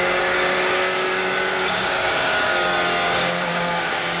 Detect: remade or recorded remade